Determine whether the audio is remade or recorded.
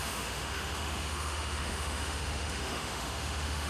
remade